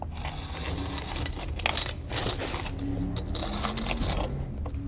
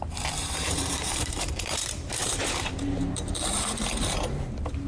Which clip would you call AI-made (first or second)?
second